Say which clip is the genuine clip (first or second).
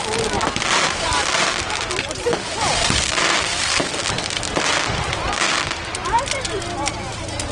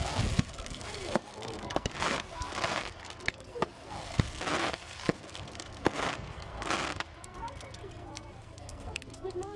first